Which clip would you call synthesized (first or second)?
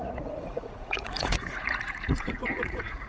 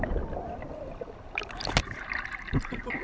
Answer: first